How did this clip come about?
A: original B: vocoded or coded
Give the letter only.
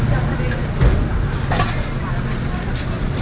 A